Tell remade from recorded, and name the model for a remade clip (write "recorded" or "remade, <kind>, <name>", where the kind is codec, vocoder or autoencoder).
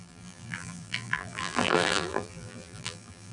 remade, vocoder, BigVGAN v2